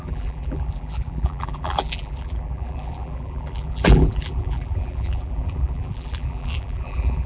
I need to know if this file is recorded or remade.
remade